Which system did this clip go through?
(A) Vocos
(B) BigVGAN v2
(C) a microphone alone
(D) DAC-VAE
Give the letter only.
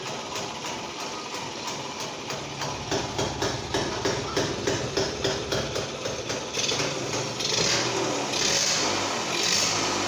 C